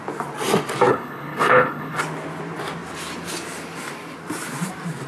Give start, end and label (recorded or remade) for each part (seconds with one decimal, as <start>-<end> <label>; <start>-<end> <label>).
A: 0.0-0.9 recorded; 0.9-2.0 remade; 2.0-5.1 recorded